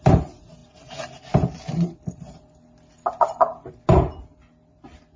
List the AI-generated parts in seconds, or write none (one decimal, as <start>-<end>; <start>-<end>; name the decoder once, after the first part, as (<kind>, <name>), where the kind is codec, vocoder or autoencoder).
none